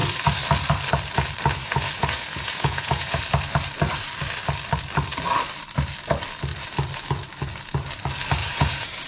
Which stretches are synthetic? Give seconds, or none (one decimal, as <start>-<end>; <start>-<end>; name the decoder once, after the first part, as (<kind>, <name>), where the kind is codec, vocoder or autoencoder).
1.6-3.2 (vocoder, Vocos); 8.4-9.1